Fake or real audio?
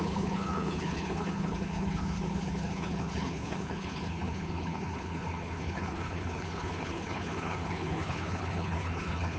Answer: fake